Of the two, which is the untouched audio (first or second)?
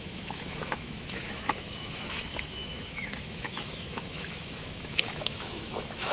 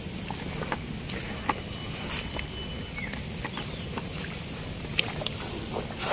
second